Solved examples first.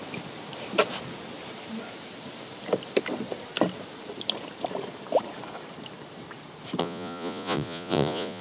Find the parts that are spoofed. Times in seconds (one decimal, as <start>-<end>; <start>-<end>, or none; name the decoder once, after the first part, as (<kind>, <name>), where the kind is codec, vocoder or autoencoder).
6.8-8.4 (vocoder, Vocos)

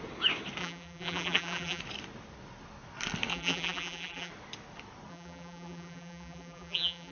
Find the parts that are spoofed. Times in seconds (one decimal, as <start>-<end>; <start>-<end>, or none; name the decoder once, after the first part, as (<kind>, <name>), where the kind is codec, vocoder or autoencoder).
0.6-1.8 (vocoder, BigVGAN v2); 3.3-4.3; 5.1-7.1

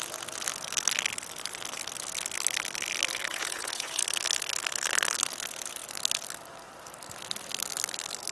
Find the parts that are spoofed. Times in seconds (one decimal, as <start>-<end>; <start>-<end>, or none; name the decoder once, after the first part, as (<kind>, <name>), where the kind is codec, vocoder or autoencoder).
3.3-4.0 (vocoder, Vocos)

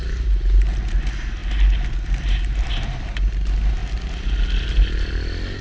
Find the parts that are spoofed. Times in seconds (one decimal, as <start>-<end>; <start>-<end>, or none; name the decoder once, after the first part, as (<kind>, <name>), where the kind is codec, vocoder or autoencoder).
none